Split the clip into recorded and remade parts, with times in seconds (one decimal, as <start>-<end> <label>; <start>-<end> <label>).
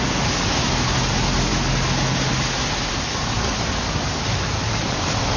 0.0-5.4 recorded